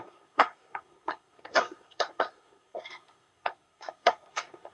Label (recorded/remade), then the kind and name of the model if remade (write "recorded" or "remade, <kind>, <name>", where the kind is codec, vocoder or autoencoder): remade, codec, SNAC